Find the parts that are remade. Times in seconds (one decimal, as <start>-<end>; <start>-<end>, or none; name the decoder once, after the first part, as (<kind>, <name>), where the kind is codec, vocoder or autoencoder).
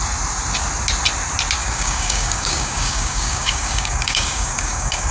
1.6-5.1 (codec, DAC)